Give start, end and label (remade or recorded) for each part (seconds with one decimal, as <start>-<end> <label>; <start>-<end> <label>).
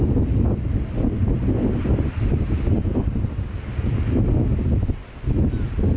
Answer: 0.0-6.0 recorded